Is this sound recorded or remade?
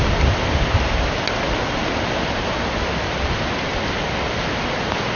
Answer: recorded